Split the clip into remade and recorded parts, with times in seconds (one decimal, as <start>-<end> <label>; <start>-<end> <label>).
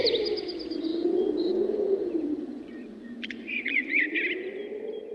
0.0-0.9 recorded; 0.9-4.0 remade; 4.0-5.1 recorded